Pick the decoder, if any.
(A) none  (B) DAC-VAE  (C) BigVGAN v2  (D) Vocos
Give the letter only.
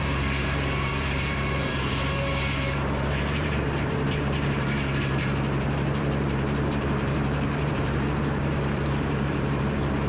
C